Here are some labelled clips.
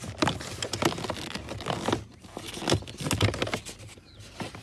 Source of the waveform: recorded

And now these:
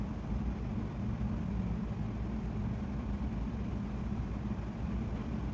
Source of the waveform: remade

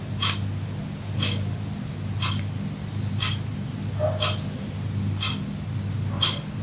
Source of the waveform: remade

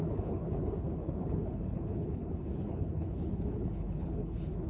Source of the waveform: remade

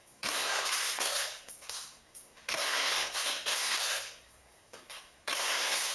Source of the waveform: remade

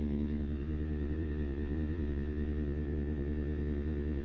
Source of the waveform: remade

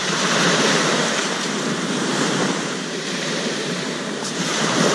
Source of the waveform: remade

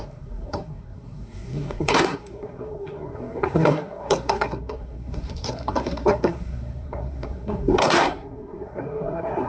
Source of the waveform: remade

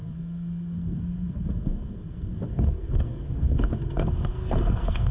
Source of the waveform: remade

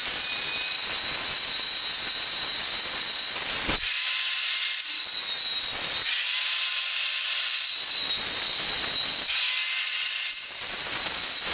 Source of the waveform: recorded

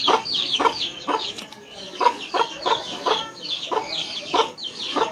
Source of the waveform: remade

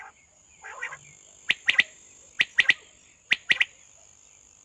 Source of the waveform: recorded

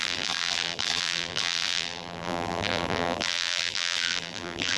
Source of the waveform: remade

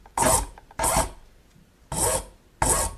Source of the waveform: recorded